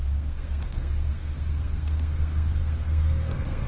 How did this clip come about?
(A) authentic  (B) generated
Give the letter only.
B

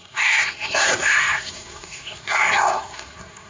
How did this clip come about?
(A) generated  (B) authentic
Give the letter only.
A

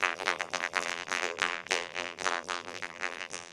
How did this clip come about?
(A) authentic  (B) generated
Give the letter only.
B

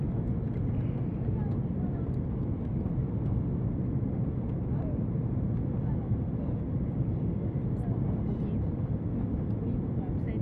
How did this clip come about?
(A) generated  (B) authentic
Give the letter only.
B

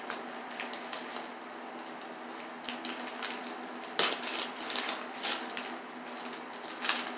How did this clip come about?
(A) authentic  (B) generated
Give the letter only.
A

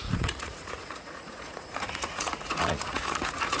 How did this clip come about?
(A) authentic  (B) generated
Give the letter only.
B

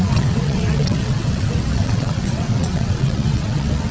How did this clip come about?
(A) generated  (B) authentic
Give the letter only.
A